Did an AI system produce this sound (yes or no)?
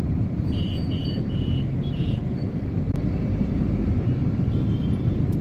yes